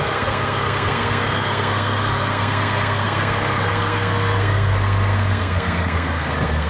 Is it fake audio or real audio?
fake